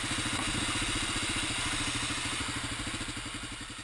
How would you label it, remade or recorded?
recorded